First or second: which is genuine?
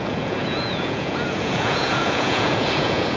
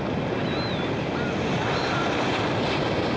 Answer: second